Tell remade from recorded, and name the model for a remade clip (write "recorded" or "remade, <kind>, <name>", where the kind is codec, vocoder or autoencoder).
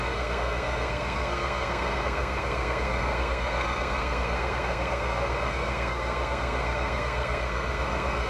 remade, codec, SNAC